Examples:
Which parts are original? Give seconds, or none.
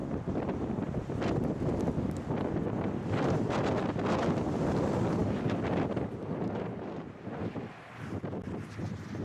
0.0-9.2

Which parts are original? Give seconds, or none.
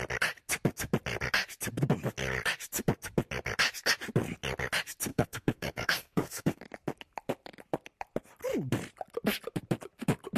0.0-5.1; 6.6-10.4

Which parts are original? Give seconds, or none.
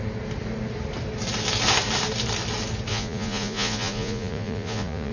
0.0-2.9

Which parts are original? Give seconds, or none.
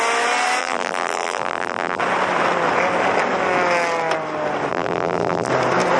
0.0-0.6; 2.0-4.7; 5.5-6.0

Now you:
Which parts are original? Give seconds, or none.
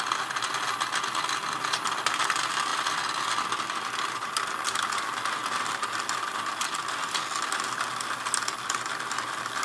0.0-9.6